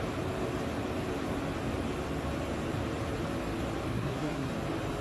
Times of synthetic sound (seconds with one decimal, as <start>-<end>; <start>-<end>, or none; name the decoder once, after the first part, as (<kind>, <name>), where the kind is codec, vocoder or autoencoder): 3.9-4.5 (codec, SNAC)